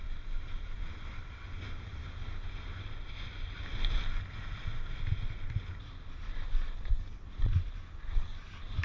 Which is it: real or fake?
real